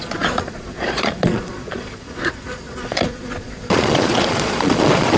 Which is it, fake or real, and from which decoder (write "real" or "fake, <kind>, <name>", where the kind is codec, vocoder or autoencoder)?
fake, vocoder, Vocos